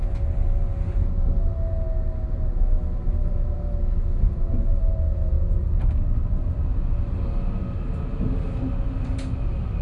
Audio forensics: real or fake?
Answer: real